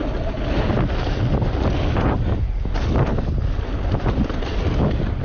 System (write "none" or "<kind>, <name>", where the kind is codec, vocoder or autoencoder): none